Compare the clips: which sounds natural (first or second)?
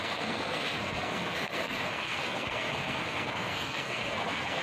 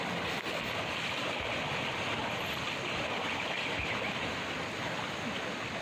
second